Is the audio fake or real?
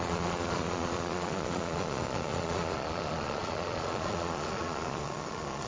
fake